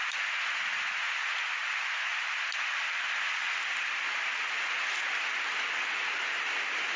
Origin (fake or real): real